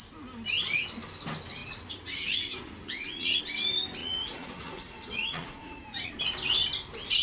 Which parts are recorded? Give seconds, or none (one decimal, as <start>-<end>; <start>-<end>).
0.0-1.6; 3.4-4.0; 6.1-7.2